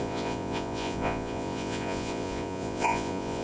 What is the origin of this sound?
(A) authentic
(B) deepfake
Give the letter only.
B